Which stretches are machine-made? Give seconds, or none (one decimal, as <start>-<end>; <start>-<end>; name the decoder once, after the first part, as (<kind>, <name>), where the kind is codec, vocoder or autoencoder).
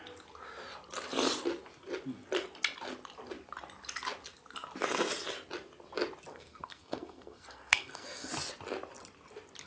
6.3-8.3 (codec, SNAC)